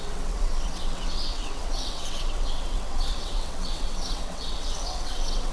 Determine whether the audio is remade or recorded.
remade